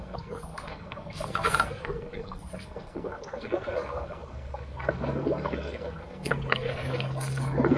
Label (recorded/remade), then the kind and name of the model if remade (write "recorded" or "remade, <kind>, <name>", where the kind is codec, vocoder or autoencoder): remade, codec, SNAC